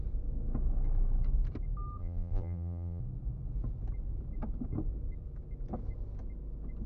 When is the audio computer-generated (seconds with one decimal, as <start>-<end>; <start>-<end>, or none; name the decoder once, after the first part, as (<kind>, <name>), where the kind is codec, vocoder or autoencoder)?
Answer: 2.0-3.0 (vocoder, BigVGAN v2)